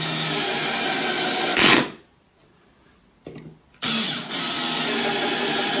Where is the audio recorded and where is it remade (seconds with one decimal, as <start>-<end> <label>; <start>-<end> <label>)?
0.0-1.5 recorded; 1.5-2.7 remade; 2.7-5.8 recorded